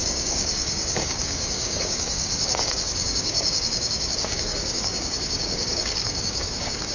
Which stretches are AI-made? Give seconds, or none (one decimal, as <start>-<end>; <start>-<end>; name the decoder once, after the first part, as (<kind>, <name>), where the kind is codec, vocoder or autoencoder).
0.0-6.9 (codec, DAC)